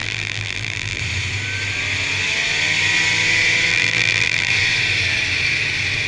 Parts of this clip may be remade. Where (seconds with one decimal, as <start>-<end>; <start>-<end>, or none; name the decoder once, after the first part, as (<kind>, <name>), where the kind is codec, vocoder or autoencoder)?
0.0-1.0 (vocoder, BigVGAN v2); 3.7-4.5

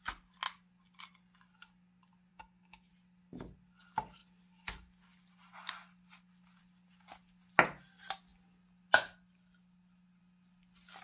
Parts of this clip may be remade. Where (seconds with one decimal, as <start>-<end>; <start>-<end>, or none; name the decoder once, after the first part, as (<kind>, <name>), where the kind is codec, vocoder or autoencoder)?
2.3-2.9 (codec, DAC)